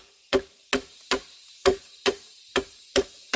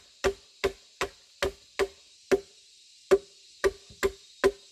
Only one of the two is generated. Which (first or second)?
first